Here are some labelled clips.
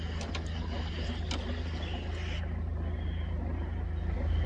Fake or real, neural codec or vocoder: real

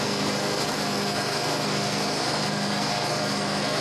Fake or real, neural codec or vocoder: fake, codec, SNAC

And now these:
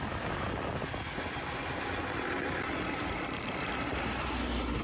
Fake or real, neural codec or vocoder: real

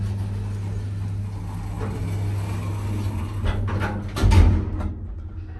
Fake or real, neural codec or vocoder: real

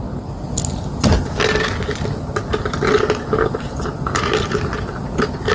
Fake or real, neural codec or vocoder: real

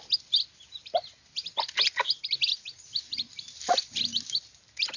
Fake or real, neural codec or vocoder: real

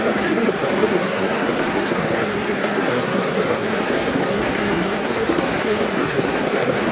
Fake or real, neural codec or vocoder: fake, codec, SNAC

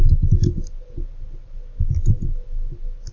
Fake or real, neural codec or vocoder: real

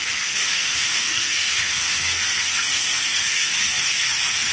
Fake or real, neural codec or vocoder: fake, codec, SNAC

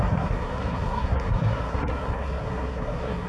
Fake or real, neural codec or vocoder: fake, codec, SNAC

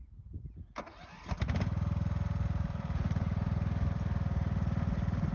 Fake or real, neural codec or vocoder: real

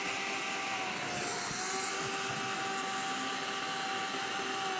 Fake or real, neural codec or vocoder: real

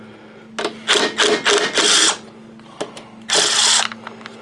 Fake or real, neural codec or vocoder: real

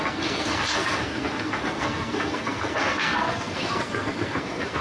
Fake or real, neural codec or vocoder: fake, codec, SNAC